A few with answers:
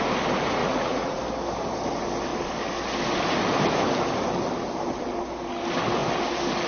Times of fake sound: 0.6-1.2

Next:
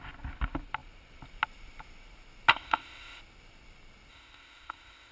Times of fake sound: 2.5-3.2; 4.1-5.1

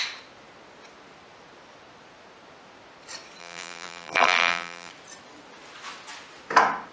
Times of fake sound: 3.4-4.9